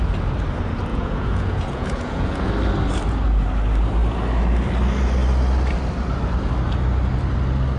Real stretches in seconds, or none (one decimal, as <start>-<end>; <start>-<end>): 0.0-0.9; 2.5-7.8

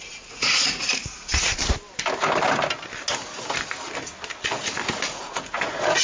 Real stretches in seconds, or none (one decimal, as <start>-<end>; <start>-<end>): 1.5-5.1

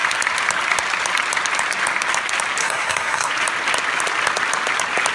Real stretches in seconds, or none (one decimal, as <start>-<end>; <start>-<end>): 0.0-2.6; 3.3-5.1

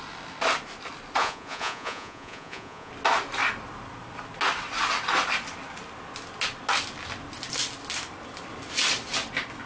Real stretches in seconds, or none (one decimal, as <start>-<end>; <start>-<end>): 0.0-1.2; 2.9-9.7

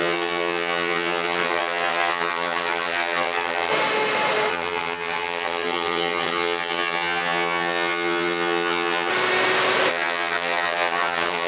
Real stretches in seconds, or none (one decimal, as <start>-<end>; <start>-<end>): 3.7-4.5; 9.1-9.9